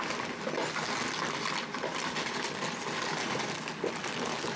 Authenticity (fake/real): real